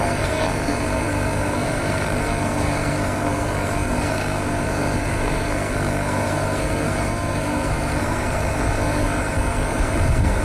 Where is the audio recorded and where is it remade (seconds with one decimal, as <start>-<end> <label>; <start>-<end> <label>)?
0.0-10.4 remade